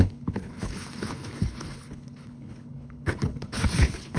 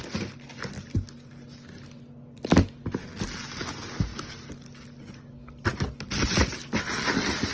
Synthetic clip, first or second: first